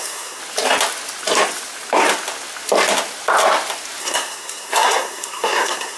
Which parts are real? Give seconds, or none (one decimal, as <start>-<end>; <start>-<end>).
0.4-4.0